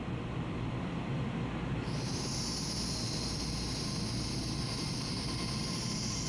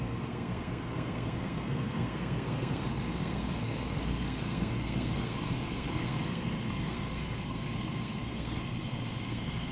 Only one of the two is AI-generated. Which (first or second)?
second